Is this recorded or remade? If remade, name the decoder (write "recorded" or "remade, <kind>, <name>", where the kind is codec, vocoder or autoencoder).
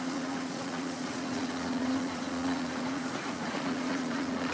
remade, vocoder, Vocos